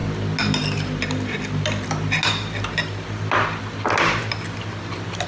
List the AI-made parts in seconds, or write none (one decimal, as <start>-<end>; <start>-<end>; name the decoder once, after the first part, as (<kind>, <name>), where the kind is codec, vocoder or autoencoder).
none